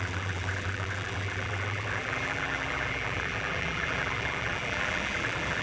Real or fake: fake